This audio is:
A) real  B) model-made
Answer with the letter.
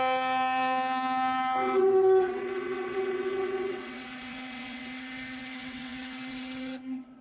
B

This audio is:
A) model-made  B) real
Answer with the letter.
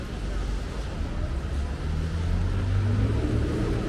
B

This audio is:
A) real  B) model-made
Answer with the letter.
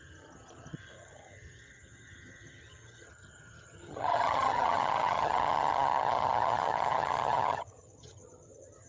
B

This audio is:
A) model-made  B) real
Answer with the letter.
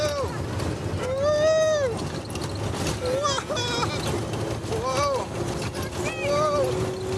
B